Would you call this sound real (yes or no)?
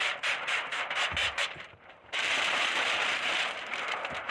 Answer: no